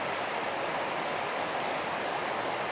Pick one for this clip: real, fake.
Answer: real